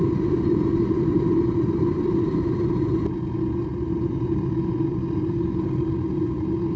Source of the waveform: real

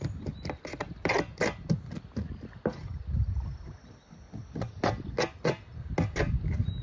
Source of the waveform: real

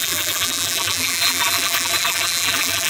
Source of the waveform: fake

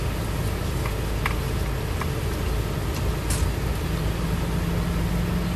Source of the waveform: real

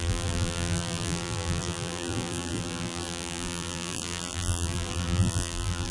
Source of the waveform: fake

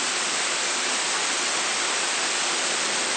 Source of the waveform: fake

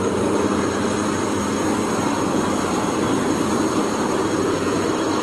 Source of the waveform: fake